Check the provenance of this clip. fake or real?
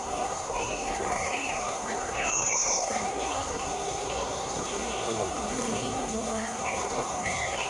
fake